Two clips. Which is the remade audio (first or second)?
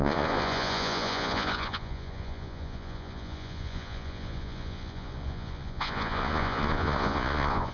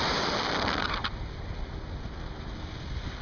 first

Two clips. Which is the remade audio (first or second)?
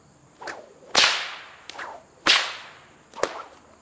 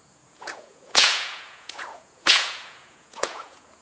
second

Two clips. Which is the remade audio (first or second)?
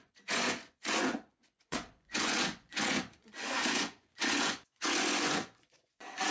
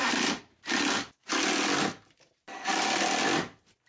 first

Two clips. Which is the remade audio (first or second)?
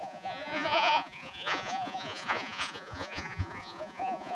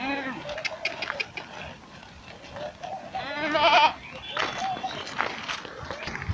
first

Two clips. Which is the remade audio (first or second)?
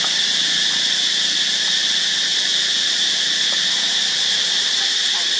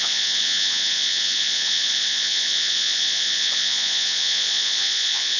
second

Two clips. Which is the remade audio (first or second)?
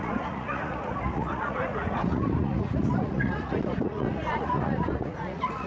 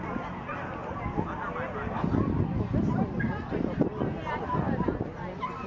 first